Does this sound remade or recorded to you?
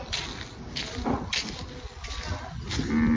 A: recorded